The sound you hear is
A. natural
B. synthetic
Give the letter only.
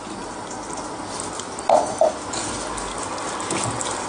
A